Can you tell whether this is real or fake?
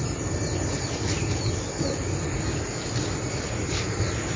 real